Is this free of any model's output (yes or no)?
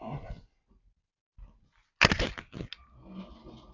yes